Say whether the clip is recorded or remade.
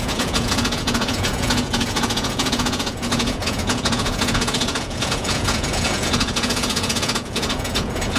remade